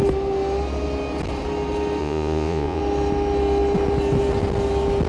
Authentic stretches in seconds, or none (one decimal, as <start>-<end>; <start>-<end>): 0.0-2.0; 2.8-5.1